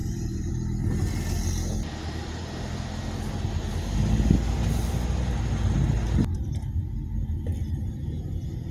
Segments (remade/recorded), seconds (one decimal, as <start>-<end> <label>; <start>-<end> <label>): 0.0-0.5 remade; 0.5-8.7 recorded